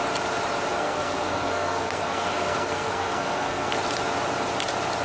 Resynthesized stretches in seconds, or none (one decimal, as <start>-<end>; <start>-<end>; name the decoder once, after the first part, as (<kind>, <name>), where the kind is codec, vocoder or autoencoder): 0.7-3.7 (codec, SNAC)